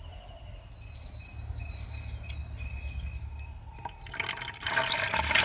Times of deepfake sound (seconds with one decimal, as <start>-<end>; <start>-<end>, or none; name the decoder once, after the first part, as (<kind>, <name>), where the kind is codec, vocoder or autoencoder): none